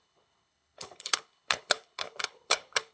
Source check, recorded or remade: remade